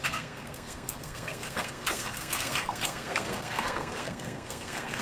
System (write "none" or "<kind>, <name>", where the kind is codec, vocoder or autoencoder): codec, SNAC